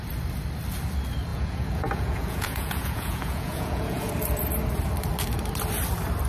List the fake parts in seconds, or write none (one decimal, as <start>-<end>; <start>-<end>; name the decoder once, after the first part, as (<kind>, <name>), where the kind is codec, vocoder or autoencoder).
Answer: 1.3-4.1 (vocoder, Vocos)